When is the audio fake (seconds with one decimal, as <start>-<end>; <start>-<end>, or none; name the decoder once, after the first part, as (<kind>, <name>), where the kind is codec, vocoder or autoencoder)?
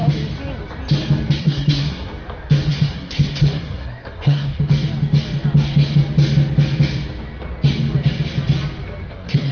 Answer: 1.4-2.1 (codec, SNAC); 2.7-4.6; 9.1-9.5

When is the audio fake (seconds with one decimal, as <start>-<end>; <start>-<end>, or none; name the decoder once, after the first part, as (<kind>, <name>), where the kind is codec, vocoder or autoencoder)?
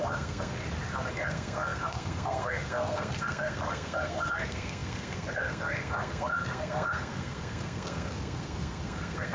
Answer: 0.0-0.6 (codec, SNAC); 1.1-9.3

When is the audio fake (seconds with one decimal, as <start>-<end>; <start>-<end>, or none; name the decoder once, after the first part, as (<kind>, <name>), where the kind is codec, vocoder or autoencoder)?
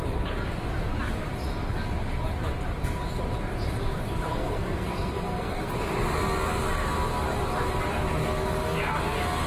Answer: 4.3-5.7 (codec, SNAC)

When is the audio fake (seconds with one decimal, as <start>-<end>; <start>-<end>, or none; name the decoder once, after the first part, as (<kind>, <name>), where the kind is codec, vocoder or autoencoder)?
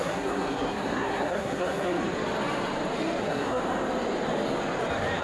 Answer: 0.0-2.0 (codec, SNAC); 3.2-3.6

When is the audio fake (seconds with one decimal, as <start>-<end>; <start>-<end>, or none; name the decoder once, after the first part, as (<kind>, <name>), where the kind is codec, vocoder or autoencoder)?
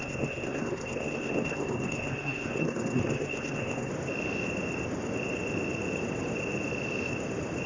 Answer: 0.0-3.9 (codec, SNAC)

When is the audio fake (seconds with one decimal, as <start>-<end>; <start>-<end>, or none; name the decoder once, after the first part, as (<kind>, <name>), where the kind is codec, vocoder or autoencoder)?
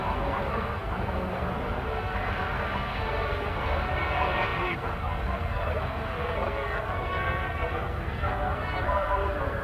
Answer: 0.0-9.6 (codec, SNAC)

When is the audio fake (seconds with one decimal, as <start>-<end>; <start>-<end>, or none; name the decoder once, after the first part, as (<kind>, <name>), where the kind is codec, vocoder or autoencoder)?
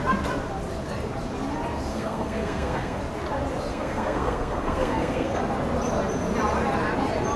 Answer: 1.9-3.0 (codec, SNAC); 3.7-5.4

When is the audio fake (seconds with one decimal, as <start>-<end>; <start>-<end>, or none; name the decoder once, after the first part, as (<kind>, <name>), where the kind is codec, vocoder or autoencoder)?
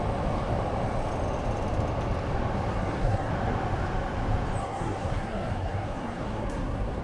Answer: 2.7-3.3 (codec, SNAC); 4.6-7.0